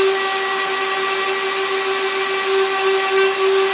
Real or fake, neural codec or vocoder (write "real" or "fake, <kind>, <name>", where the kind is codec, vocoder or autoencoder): real